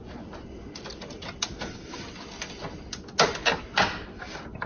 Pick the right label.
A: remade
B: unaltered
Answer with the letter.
B